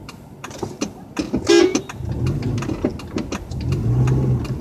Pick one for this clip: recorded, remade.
recorded